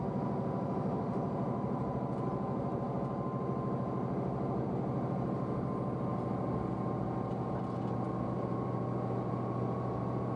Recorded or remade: recorded